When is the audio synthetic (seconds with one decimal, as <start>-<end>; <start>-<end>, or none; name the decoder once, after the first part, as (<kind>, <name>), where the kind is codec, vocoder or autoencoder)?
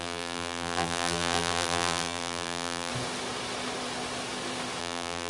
0.0-2.9 (vocoder, BigVGAN v2); 4.8-5.3